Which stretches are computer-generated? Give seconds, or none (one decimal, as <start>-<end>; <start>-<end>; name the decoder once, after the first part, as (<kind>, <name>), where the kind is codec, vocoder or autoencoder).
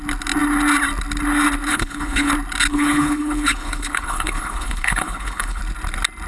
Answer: 1.7-2.3 (codec, HILCodec); 2.7-5.6